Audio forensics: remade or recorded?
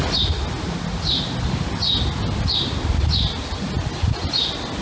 recorded